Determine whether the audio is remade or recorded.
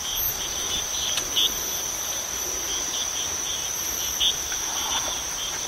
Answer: remade